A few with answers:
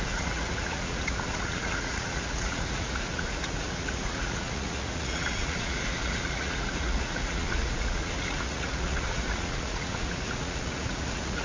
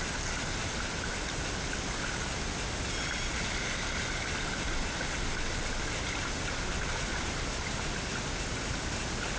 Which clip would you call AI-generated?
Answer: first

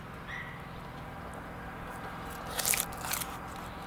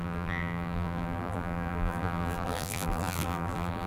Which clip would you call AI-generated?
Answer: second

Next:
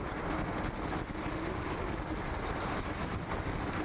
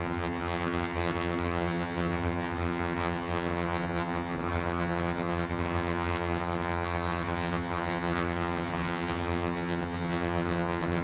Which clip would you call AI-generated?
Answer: second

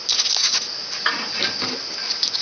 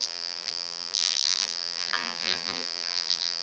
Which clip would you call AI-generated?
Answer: second